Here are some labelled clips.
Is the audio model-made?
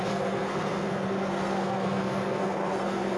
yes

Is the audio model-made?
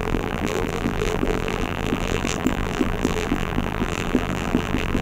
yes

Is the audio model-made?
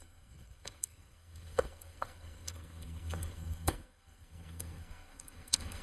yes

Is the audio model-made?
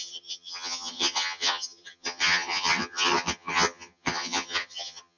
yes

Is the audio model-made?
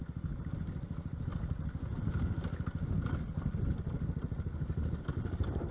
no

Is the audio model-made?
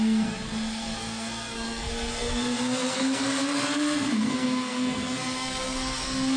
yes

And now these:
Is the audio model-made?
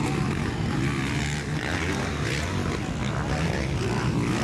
no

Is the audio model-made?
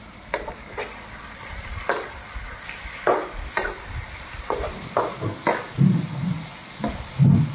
no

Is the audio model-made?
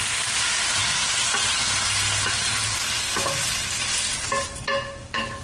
no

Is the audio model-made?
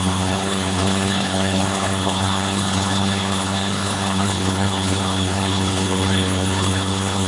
yes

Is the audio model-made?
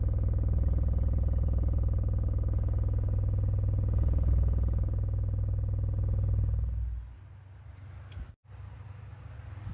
no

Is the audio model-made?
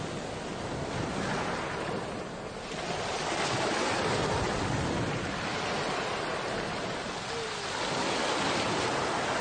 no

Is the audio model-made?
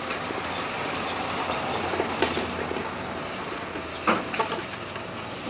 no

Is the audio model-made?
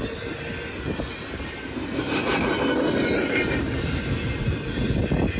no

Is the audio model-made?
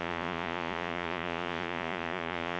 yes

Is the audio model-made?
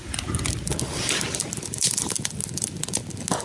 no